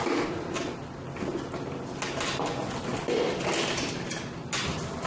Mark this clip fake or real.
real